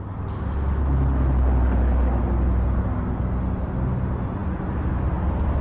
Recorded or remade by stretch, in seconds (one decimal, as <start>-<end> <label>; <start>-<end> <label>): 0.0-5.6 recorded